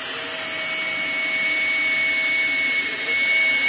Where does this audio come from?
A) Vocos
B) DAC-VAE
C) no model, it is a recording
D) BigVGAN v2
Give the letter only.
C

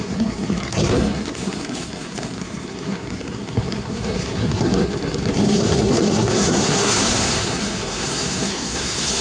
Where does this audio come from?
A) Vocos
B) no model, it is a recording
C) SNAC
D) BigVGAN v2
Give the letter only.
C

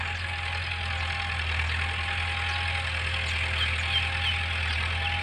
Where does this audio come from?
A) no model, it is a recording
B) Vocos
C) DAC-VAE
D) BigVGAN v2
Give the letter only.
A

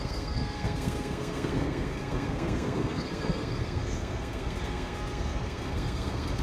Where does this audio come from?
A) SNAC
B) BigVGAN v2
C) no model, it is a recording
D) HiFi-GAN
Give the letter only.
A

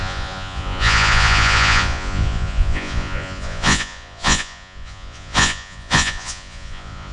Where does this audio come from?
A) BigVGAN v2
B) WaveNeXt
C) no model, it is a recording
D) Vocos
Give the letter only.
D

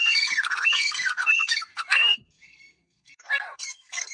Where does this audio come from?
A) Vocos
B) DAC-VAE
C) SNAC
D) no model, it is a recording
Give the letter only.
C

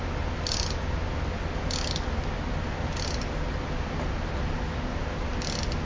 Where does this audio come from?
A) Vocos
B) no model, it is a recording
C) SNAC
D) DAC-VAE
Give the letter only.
B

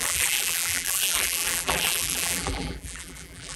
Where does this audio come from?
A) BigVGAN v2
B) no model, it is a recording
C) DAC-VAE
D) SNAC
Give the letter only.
A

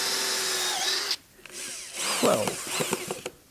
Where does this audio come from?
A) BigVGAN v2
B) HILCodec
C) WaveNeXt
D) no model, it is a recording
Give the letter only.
D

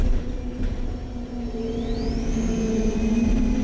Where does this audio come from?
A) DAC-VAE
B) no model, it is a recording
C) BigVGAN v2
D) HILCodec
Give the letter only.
C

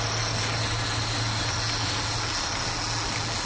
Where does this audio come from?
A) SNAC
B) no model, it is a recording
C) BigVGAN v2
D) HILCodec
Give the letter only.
B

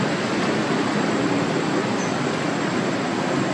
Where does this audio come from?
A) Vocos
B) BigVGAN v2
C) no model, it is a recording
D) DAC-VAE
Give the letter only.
C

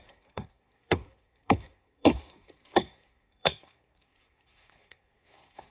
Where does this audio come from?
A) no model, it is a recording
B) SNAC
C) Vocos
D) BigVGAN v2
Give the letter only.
B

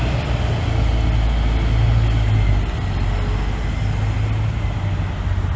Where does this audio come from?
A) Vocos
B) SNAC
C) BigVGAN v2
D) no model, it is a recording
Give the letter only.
D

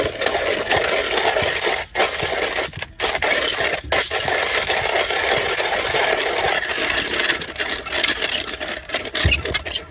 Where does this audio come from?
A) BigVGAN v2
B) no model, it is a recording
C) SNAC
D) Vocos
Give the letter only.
B